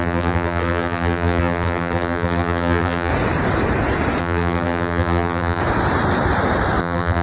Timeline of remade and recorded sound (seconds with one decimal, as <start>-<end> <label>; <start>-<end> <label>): 0.0-3.1 remade; 3.1-4.2 recorded; 4.2-5.6 remade; 5.6-6.8 recorded; 6.8-7.2 remade